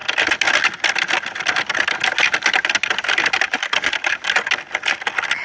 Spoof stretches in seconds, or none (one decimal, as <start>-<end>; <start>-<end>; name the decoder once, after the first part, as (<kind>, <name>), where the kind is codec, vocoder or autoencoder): none